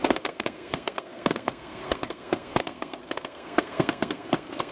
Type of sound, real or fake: fake